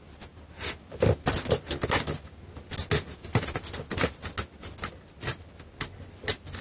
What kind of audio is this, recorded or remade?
recorded